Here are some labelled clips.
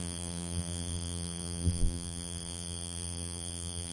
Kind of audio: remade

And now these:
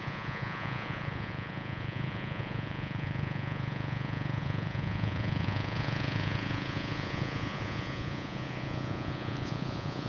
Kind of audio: remade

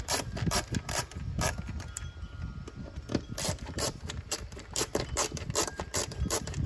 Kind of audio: remade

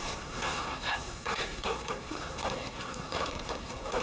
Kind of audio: remade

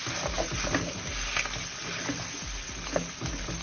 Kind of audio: recorded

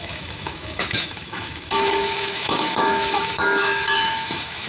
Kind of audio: remade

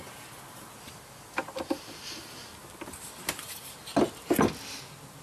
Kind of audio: recorded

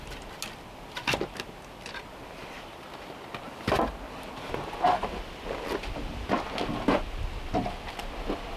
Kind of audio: recorded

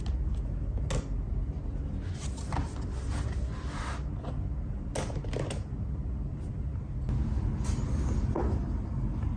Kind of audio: recorded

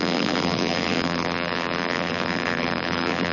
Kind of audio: remade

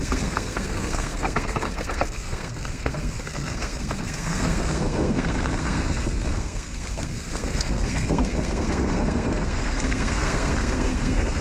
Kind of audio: remade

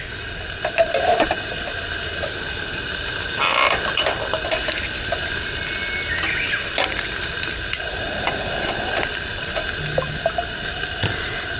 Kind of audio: recorded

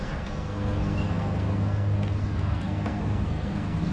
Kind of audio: remade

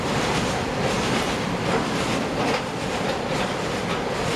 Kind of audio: recorded